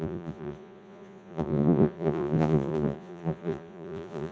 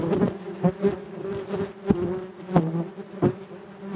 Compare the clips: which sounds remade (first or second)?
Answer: first